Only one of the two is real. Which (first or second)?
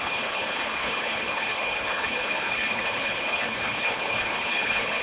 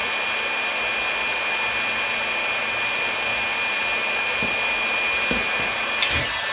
second